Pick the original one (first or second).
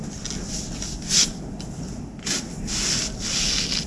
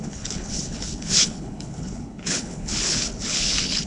first